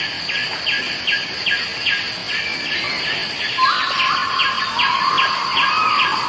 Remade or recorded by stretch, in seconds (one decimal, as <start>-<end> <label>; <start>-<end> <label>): 0.0-6.3 recorded